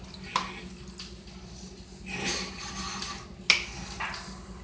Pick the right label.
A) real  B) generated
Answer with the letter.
A